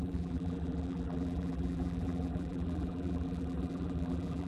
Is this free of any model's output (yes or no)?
no